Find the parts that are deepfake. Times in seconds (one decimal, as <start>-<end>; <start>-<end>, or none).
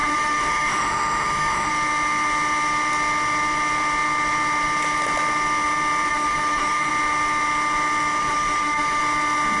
0.0-1.7; 6.1-6.9; 8.2-9.0